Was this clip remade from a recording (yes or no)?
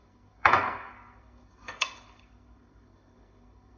yes